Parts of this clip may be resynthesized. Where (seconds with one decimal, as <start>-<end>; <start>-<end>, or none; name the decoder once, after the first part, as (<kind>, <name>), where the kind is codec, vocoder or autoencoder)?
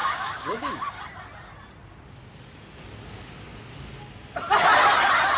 0.0-1.0 (codec, DAC)